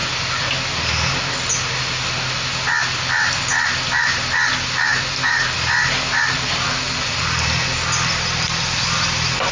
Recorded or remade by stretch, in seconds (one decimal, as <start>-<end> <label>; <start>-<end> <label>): 0.0-9.5 recorded